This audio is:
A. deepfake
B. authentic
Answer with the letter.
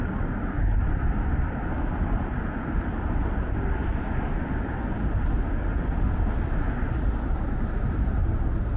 B